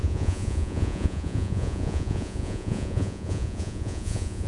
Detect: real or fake fake